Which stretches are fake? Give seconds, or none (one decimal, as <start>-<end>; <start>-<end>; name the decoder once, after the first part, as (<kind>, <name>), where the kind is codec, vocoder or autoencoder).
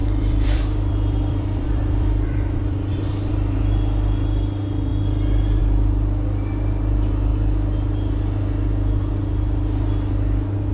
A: 0.0-3.3 (vocoder, BigVGAN v2)